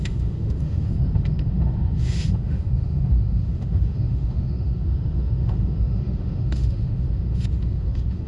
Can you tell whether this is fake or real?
fake